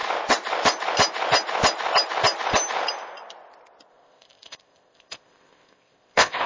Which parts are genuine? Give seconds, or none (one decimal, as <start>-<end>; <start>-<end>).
0.0-3.9